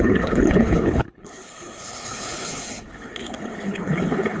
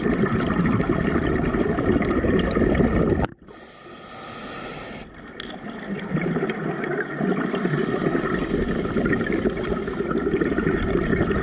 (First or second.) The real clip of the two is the second